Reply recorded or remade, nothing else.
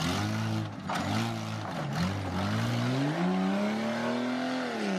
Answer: recorded